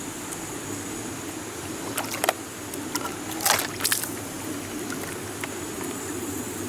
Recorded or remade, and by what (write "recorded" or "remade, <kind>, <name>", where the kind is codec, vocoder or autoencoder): recorded